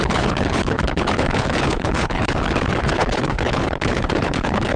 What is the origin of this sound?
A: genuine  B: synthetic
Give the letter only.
B